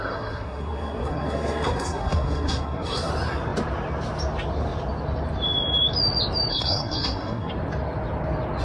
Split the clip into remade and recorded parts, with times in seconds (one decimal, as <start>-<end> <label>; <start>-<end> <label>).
0.0-3.1 remade; 3.1-6.5 recorded; 6.5-7.5 remade; 7.5-8.6 recorded